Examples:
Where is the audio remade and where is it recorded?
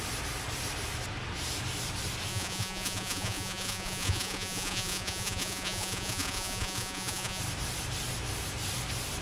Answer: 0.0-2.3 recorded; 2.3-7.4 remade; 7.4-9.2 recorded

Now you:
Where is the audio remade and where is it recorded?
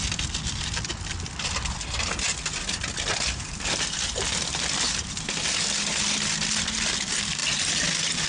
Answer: 0.0-8.3 recorded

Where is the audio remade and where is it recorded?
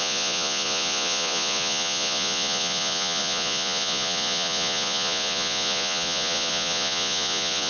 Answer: 0.0-7.7 remade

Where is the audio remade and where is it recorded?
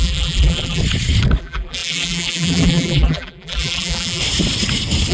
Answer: 0.0-0.8 remade; 0.8-1.4 recorded; 1.4-4.2 remade; 4.2-5.1 recorded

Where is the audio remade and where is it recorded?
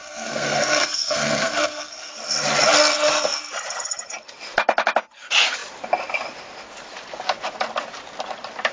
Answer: 0.0-2.1 remade; 2.1-8.7 recorded